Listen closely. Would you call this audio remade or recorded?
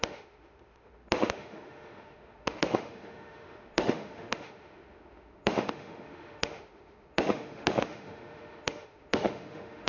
remade